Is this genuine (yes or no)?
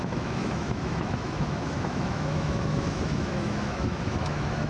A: no